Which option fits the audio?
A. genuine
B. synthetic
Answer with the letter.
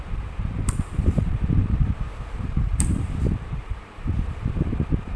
B